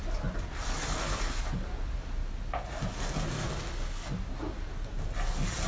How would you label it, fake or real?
real